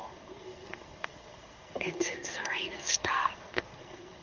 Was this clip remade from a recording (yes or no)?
yes